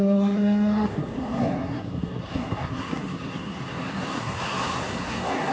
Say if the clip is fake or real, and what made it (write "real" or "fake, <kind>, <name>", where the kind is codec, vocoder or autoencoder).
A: fake, codec, SNAC